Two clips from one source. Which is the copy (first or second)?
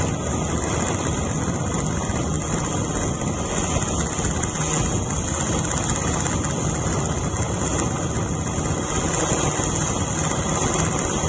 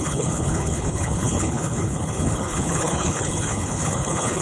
second